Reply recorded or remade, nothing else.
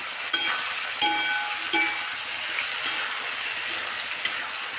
recorded